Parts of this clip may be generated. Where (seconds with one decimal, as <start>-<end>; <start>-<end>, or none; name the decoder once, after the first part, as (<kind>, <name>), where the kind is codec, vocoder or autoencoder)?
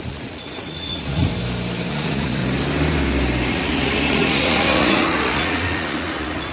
0.0-1.3 (vocoder, Vocos); 1.9-2.4; 3.5-6.5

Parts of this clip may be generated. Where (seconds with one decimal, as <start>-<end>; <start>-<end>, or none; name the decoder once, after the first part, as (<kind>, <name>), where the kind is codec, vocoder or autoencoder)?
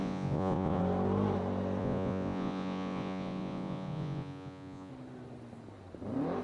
0.0-0.8 (vocoder, Vocos); 1.8-4.9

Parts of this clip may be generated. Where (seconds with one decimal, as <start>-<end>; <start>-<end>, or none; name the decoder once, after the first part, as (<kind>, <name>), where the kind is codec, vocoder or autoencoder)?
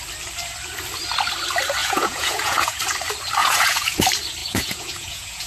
1.8-2.8 (vocoder, Vocos); 3.4-4.0; 4.4-5.5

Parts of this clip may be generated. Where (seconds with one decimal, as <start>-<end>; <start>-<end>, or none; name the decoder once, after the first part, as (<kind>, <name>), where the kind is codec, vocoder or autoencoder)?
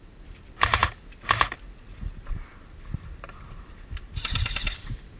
none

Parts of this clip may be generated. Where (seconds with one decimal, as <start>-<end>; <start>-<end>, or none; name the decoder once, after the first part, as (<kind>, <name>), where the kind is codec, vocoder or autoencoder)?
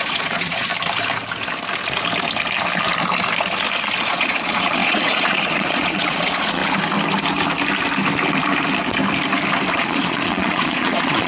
0.0-0.7 (vocoder, Vocos); 4.0-6.6; 9.7-11.3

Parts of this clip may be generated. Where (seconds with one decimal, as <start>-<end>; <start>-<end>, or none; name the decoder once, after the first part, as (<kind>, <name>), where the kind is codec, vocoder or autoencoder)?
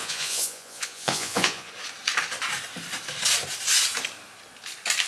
0.0-1.7 (vocoder, Vocos)